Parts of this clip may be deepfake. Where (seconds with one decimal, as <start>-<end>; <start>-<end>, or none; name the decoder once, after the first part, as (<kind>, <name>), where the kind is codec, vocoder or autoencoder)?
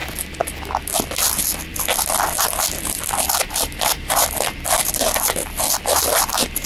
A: 3.4-6.7 (vocoder, BigVGAN v2)